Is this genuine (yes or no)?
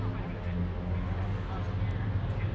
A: yes